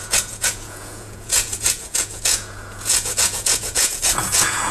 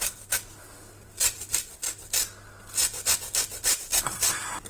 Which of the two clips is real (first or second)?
second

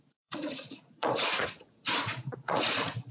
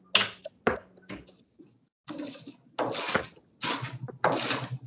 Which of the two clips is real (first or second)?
second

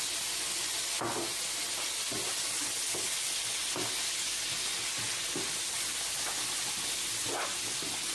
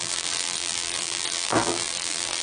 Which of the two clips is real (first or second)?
first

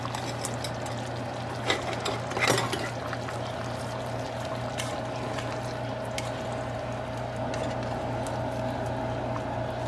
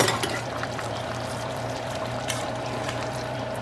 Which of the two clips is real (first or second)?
first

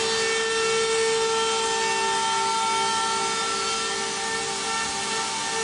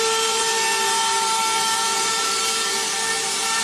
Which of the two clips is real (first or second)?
first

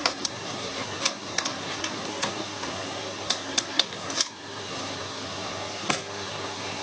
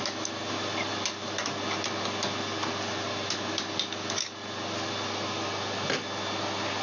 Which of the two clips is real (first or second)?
second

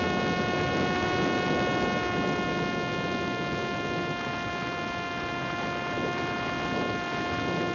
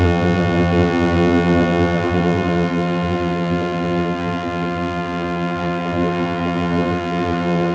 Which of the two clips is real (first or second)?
first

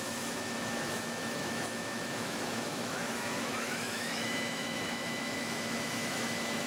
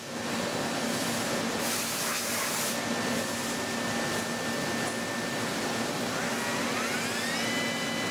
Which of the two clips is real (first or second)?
second